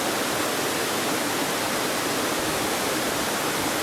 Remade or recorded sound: recorded